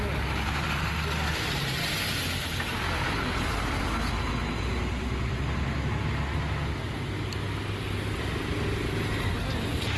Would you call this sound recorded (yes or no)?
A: yes